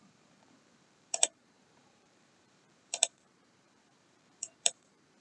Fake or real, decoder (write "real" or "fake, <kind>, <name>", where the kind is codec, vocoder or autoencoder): fake, vocoder, BigVGAN v2